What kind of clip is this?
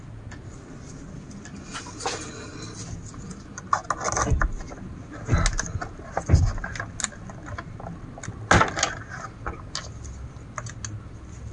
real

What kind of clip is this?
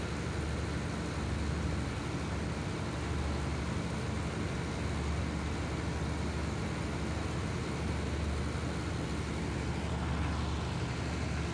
real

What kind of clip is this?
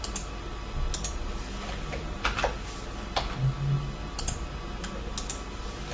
real